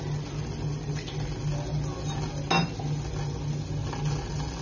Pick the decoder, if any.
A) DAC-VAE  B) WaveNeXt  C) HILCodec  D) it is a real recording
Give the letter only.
D